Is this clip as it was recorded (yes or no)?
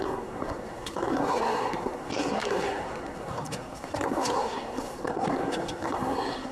no